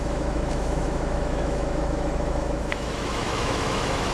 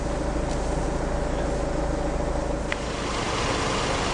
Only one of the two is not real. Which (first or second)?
first